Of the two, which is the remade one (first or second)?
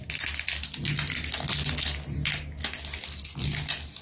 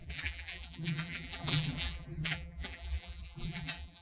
second